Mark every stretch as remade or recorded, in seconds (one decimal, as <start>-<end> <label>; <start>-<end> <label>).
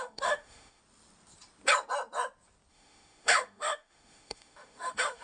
0.0-0.8 remade; 0.8-2.7 recorded; 2.7-5.2 remade